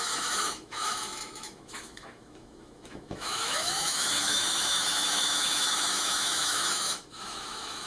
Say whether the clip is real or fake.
fake